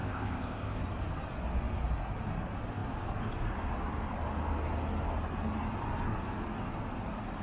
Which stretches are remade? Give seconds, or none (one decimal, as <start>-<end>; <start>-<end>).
0.0-0.8